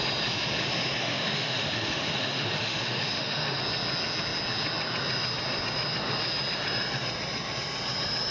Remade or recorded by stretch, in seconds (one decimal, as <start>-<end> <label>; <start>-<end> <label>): 0.0-0.6 recorded; 0.6-3.6 remade; 3.6-8.3 recorded